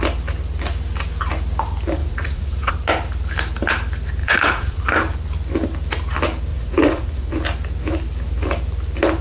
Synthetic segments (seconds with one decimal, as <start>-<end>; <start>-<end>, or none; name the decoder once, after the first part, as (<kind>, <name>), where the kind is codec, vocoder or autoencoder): 2.0-2.7 (vocoder, Vocos); 4.2-4.8; 6.5-7.3